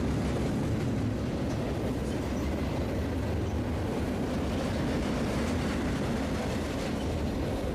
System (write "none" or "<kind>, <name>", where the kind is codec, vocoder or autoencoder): none